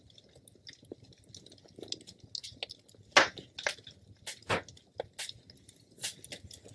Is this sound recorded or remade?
recorded